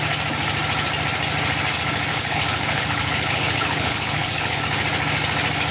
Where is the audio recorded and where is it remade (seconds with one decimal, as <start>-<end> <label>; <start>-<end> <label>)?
0.0-2.1 recorded; 2.1-4.6 remade; 4.6-5.7 recorded

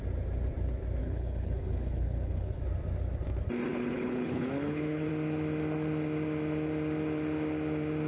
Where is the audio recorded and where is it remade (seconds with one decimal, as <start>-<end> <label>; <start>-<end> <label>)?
0.0-1.0 recorded; 1.0-2.6 remade; 2.6-3.7 recorded; 3.7-5.1 remade; 5.1-8.1 recorded

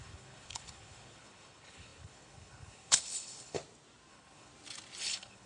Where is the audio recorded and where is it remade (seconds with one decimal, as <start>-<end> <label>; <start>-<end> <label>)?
0.0-3.6 remade; 3.6-4.1 recorded; 4.1-4.5 remade; 4.5-5.0 recorded; 5.0-5.5 remade

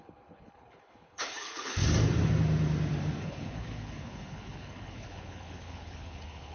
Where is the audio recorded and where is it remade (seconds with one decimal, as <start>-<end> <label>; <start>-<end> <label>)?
0.0-1.8 remade; 1.8-3.2 recorded; 3.2-6.5 remade

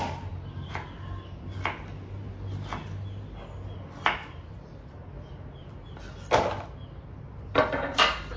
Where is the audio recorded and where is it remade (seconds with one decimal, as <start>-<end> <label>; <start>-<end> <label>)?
0.0-8.4 recorded

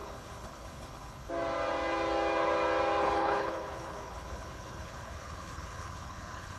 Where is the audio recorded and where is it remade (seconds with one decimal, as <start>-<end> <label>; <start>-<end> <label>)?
0.0-1.3 remade; 1.3-3.0 recorded; 3.0-6.6 remade

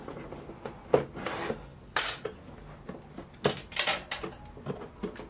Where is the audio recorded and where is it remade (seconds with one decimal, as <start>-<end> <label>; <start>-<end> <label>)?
0.0-5.3 recorded

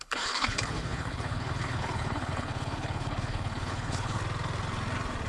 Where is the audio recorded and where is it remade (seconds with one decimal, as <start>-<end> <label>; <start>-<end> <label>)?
0.0-4.2 remade; 4.2-5.3 recorded